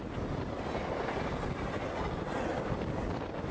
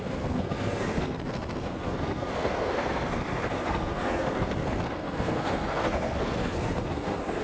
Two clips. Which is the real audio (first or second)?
first